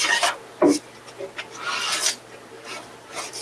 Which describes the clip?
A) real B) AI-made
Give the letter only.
A